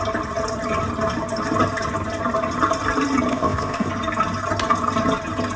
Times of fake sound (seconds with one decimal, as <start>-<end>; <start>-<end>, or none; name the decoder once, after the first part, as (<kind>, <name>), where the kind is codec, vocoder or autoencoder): 3.3-3.9 (codec, ZipCodec)

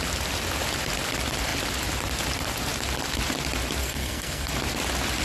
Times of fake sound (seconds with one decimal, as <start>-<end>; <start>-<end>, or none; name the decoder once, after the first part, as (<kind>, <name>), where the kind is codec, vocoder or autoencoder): 3.8-4.5 (codec, SNAC)

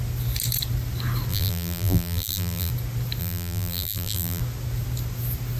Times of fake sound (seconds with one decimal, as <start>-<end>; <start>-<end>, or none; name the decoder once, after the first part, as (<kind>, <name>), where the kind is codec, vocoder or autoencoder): 1.3-2.7 (vocoder, BigVGAN v2); 3.2-4.4